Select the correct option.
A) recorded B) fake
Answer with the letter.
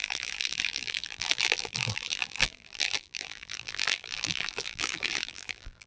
B